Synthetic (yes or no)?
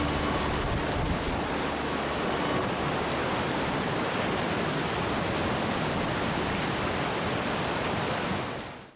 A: no